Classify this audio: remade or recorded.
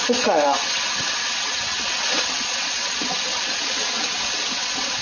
remade